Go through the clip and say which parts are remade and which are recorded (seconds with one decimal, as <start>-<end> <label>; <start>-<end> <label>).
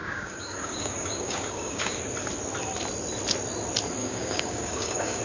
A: 0.0-2.0 remade; 2.0-4.0 recorded; 4.0-5.2 remade